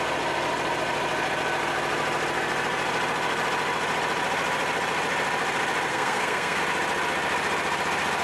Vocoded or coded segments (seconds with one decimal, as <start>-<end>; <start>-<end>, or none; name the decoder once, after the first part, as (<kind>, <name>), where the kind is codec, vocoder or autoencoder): 5.9-6.6 (codec, SNAC)